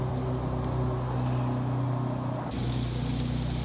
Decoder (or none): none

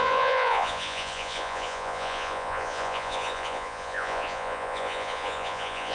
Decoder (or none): vocoder, Vocos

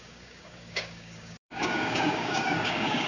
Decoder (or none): codec, DAC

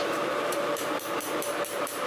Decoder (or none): vocoder, BigVGAN v2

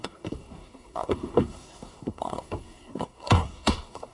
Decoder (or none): codec, SNAC